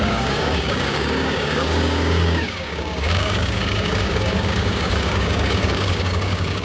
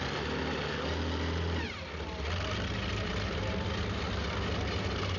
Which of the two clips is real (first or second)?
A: second